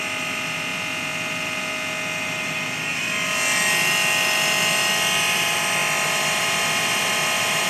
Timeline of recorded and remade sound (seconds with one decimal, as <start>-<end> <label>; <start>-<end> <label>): 0.0-7.7 recorded